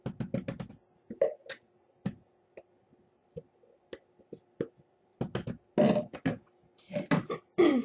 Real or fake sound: real